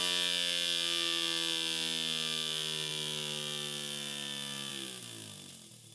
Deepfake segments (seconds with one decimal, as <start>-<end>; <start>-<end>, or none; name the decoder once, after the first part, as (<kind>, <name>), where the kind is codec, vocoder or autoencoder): none